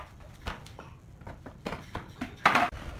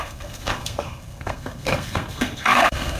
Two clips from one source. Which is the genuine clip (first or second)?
first